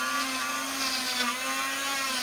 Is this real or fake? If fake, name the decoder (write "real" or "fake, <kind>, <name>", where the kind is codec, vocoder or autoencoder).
real